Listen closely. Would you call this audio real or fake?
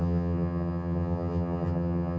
fake